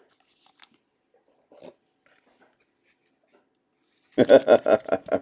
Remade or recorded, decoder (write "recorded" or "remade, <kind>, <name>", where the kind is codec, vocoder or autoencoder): recorded